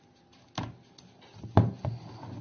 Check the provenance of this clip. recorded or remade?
recorded